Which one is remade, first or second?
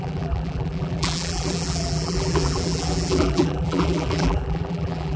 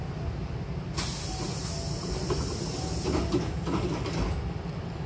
first